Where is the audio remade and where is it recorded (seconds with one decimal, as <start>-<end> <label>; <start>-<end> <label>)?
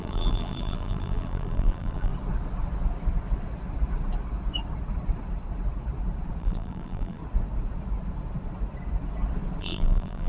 0.0-2.1 remade; 2.1-6.4 recorded; 6.4-7.2 remade; 7.2-9.6 recorded; 9.6-10.3 remade